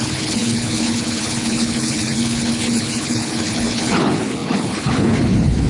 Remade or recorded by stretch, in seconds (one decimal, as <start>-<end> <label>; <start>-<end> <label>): 0.0-5.7 remade